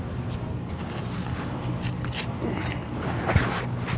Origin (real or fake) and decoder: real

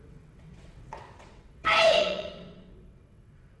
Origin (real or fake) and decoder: fake, vocoder, WaveNeXt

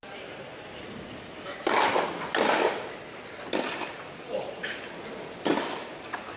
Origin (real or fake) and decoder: real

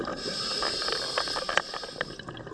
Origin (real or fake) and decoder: real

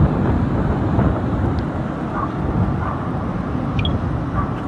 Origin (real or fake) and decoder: real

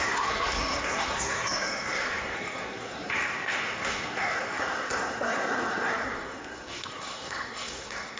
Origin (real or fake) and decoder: fake, codec, SNAC